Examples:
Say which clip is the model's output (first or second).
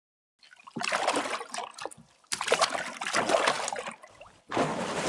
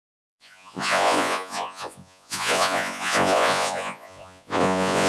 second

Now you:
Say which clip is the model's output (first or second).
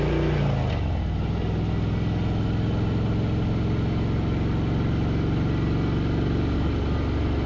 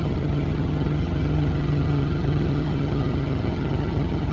second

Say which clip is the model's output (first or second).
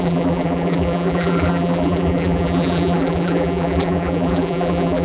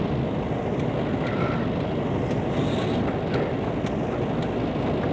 first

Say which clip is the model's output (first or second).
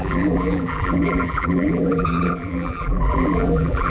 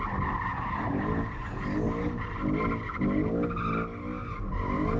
first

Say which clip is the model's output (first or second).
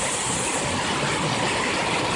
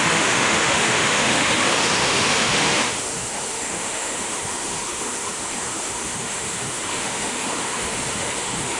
second